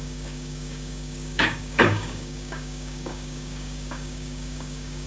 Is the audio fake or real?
fake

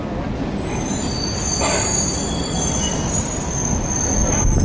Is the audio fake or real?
real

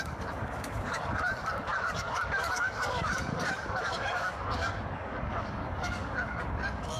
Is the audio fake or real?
fake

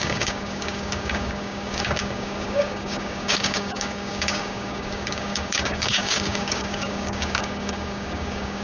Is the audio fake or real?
fake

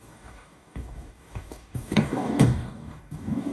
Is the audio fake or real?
fake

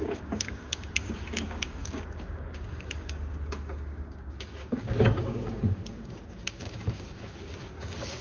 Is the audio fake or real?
fake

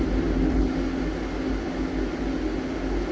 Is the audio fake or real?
real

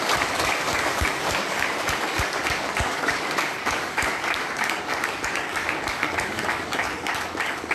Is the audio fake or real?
fake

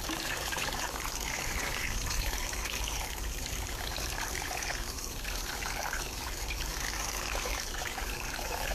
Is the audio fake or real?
fake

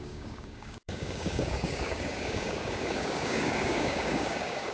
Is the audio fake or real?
fake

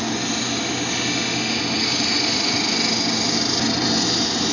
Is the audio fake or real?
real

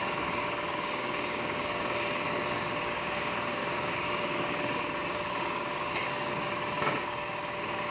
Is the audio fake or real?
fake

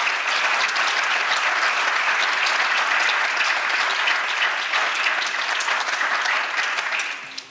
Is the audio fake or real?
real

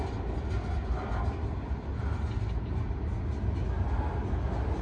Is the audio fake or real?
real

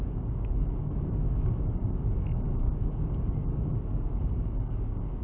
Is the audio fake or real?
fake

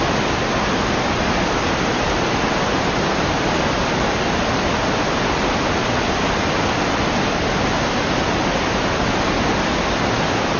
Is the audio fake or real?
real